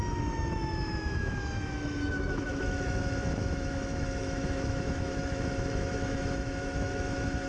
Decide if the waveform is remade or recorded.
remade